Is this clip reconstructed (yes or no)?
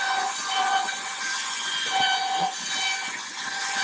yes